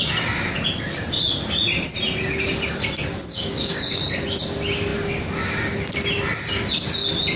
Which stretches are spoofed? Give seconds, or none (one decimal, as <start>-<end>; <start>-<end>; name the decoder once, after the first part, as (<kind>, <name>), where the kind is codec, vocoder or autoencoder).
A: 3.3-4.0 (codec, DAC)